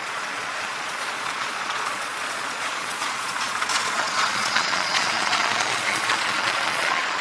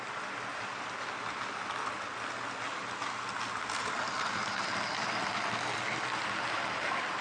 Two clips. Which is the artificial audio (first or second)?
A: first